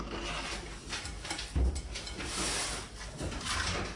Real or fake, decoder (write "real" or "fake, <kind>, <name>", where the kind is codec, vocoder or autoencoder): real